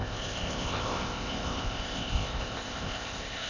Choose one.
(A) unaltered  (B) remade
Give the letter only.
B